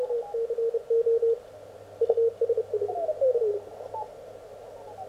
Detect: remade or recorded recorded